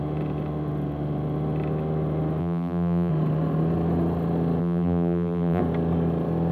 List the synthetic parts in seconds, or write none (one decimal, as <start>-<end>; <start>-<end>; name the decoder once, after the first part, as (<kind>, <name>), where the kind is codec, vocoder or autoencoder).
2.4-3.1 (vocoder, BigVGAN v2); 4.6-5.6